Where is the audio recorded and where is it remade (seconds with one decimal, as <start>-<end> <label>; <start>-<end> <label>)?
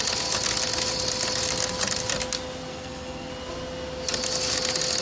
0.0-2.7 recorded; 2.7-3.3 remade; 3.3-5.0 recorded